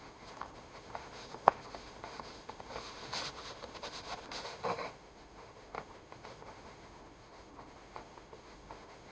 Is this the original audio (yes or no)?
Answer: no